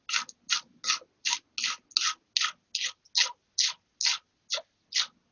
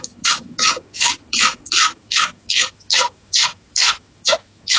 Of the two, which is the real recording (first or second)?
first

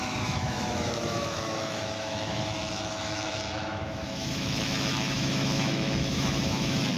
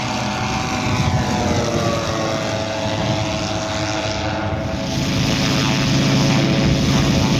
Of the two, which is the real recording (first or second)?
second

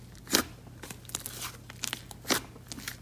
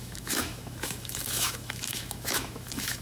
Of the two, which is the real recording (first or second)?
first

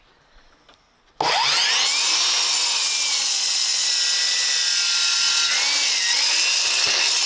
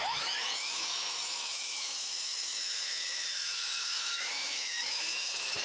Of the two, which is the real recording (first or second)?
first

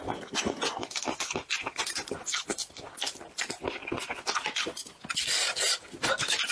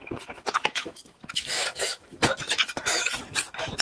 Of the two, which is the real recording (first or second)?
first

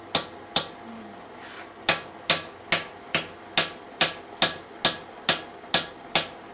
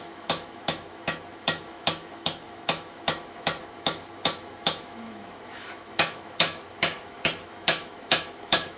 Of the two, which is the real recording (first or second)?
first